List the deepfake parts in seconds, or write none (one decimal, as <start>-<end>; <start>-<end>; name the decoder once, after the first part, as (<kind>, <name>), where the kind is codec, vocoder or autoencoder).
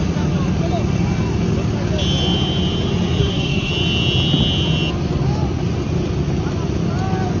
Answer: 3.2-3.7 (codec, SNAC)